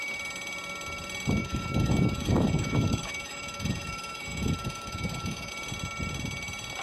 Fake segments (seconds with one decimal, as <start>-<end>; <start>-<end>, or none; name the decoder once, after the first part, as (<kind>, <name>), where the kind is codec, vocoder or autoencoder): 1.4-5.5 (autoencoder, DAC-VAE)